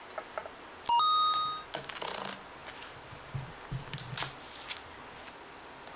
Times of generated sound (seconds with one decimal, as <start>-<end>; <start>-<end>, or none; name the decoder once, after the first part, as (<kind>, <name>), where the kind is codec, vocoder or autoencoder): none